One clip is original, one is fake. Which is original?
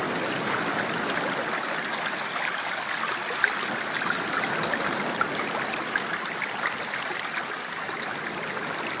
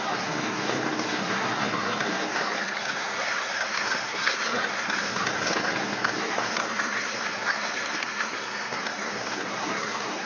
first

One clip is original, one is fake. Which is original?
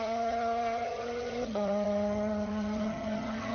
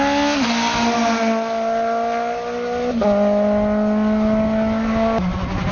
second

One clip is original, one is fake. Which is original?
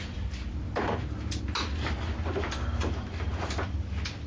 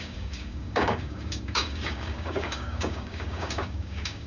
first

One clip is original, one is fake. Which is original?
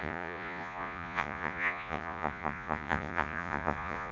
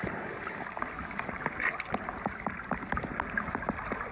second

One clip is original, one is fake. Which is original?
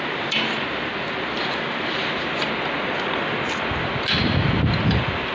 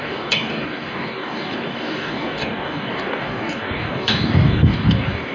first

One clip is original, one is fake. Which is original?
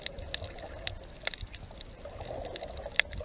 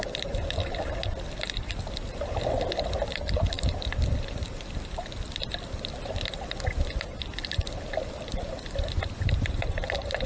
first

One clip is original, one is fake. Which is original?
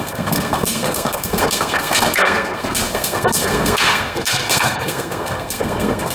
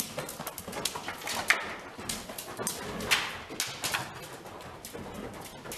second